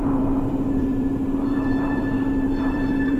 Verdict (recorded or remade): remade